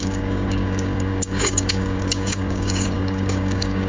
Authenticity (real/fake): fake